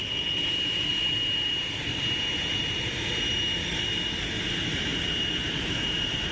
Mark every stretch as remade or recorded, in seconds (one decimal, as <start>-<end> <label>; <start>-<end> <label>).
0.0-6.3 recorded